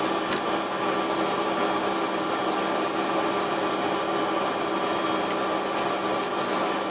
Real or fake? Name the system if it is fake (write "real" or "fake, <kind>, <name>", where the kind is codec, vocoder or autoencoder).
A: real